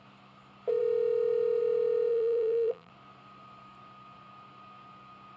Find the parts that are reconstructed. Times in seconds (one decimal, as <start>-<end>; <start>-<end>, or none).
2.1-2.9